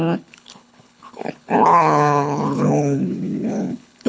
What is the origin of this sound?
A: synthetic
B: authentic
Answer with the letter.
A